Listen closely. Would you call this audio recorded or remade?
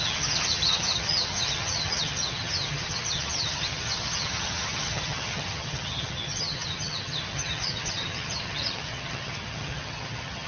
remade